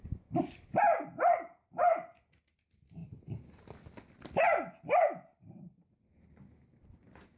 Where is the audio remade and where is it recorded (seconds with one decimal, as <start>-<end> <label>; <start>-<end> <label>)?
0.0-7.4 recorded